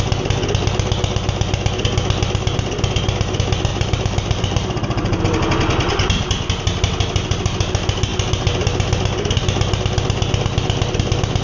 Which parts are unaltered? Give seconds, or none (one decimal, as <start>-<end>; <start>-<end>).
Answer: 0.0-3.7; 5.2-11.4